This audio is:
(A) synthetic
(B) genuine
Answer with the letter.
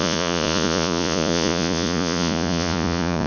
A